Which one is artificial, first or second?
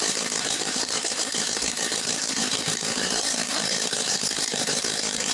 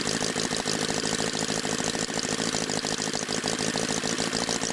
first